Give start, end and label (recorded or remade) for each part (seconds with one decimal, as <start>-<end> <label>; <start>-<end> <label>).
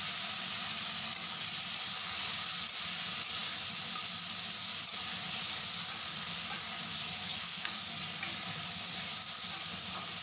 0.0-7.2 recorded; 7.2-7.8 remade; 7.8-10.2 recorded